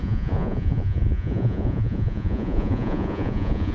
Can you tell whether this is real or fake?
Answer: fake